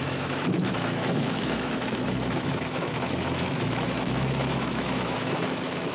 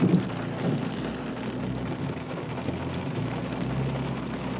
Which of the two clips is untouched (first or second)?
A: second